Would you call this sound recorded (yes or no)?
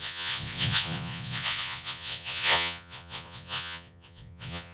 no